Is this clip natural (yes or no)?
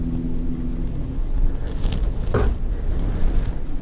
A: yes